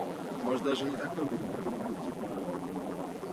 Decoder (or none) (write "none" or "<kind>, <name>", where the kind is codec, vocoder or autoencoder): vocoder, BigVGAN v2